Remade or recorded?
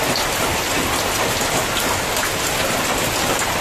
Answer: recorded